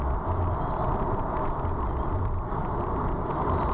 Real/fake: fake